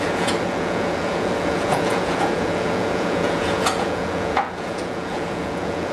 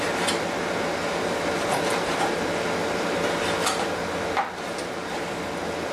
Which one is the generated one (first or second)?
first